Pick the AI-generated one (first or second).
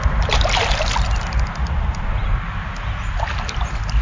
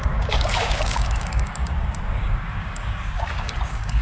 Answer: second